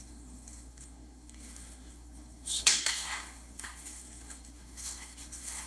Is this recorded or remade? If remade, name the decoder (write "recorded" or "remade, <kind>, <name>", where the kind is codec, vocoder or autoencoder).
remade, codec, SNAC